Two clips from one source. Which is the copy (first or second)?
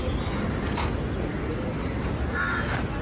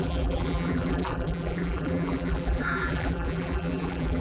second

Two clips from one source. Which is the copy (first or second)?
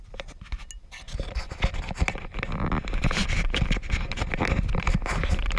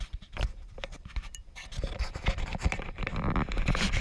second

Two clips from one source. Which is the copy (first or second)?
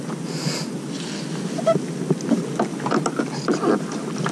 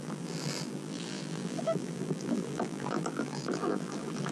second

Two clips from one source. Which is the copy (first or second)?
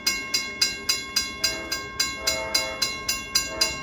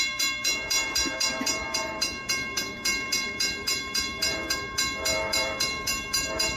second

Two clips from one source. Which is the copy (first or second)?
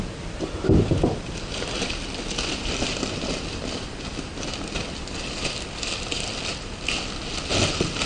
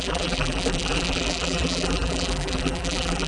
second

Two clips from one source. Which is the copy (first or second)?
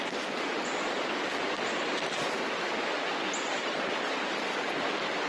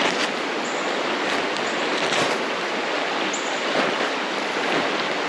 first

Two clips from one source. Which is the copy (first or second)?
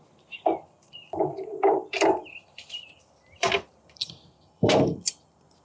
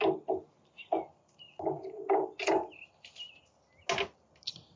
first